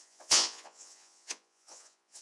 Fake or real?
fake